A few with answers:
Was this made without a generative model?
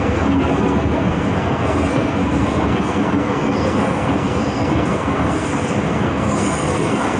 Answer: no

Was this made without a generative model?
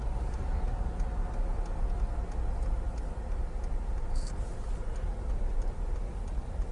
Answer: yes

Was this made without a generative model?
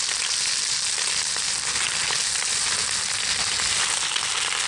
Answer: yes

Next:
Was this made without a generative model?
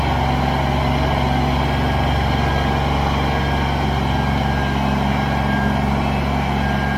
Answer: yes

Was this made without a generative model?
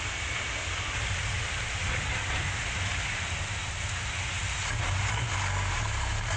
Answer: yes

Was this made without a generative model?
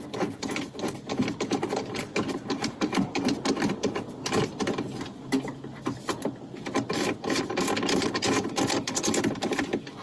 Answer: yes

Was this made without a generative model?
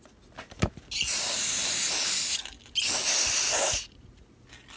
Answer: yes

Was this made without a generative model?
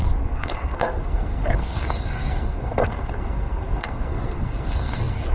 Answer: no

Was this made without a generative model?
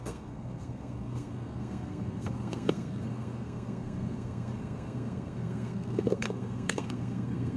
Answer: no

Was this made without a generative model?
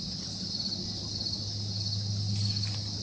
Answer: yes